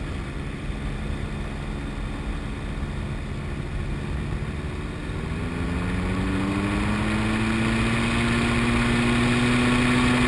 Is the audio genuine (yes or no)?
yes